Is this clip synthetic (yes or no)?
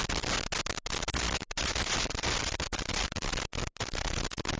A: no